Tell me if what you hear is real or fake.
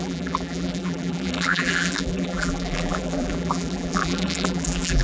fake